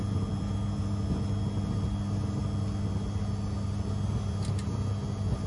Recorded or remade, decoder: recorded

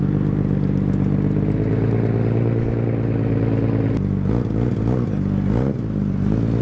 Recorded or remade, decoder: recorded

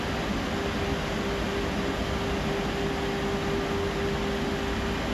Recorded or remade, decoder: recorded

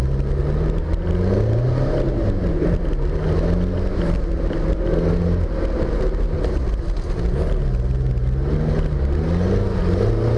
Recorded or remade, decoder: recorded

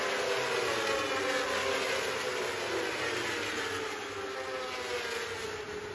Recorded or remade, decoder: recorded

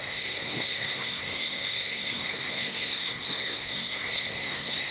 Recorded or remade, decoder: remade, codec, SNAC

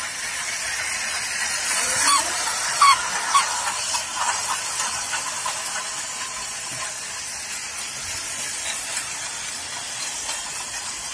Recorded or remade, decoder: recorded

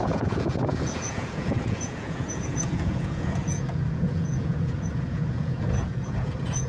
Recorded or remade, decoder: remade, vocoder, Vocos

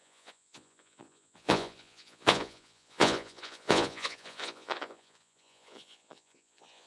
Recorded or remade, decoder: remade, vocoder, Vocos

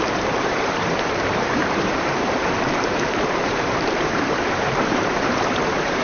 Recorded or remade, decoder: remade, vocoder, BigVGAN v2